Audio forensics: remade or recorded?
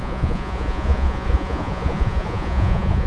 remade